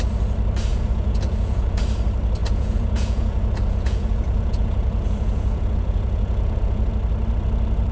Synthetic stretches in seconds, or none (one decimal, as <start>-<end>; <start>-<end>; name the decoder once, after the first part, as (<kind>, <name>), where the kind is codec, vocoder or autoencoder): 0.7-1.8 (vocoder, Vocos); 2.4-6.9